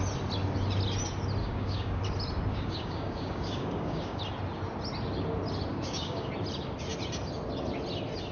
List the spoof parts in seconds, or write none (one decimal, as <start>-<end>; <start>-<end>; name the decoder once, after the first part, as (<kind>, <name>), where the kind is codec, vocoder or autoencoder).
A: 1.4-2.0 (codec, DAC); 2.5-4.2; 5.7-6.3